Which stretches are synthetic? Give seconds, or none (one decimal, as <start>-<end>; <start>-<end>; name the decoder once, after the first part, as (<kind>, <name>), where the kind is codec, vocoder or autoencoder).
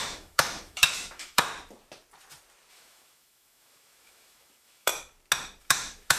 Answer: 0.0-1.5 (autoencoder, DAC-VAE); 2.7-4.9; 5.6-6.2